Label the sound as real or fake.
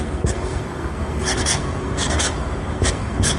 fake